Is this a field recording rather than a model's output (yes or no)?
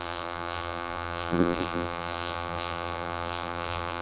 no